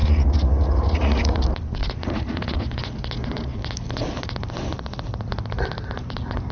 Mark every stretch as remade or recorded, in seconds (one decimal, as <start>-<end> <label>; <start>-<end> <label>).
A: 0.0-1.4 remade; 1.4-1.8 recorded; 1.8-2.6 remade; 2.6-6.5 recorded